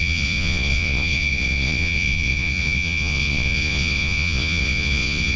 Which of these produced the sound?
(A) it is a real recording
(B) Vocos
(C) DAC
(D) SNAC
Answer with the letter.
B